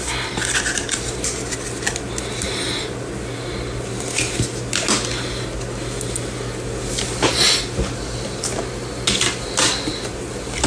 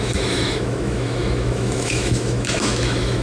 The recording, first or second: first